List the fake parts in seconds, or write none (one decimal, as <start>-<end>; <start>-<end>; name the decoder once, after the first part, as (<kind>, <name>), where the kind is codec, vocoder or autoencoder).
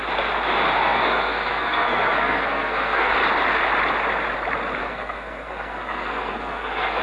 0.8-3.1 (codec, SNAC); 4.8-7.0